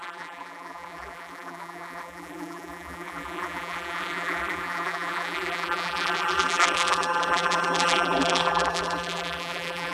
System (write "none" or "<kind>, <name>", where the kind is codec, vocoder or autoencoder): vocoder, BigVGAN v2